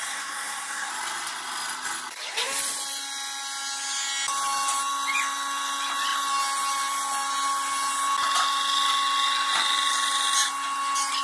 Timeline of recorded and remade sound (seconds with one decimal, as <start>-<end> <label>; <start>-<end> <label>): 0.0-0.9 remade; 0.9-11.2 recorded